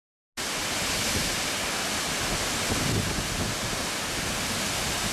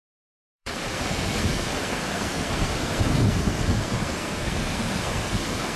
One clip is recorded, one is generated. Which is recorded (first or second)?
first